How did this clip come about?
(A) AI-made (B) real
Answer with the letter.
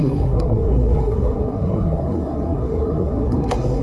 A